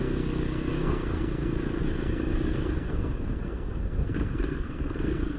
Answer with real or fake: fake